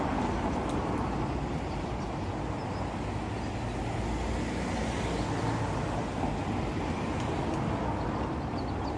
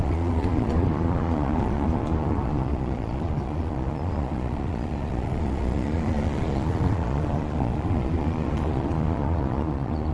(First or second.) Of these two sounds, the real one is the first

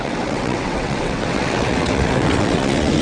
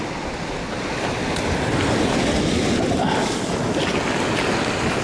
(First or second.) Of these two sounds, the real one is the second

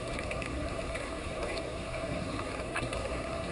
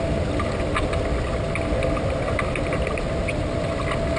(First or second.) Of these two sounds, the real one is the second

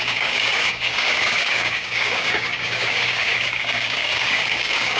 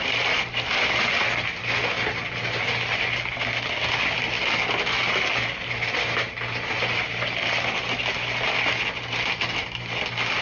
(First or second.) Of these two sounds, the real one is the second